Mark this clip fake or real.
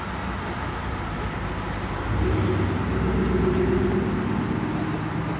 real